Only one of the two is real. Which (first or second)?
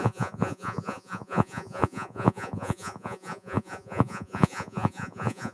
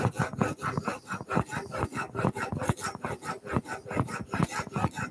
second